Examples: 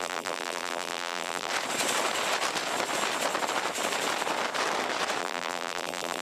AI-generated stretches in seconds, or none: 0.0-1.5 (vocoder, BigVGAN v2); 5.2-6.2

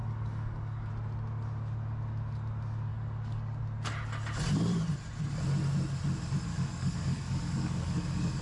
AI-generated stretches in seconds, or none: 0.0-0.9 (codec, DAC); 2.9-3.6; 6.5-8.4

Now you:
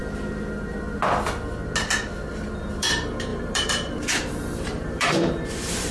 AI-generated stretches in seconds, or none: 2.3-5.9 (vocoder, BigVGAN v2)

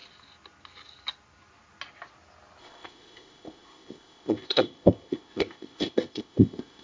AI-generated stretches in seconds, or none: 2.6-6.8 (codec, ZipCodec)